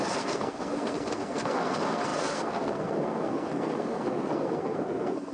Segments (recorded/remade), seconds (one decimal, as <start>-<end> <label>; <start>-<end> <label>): 0.0-5.3 remade